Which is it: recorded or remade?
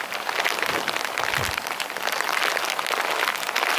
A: recorded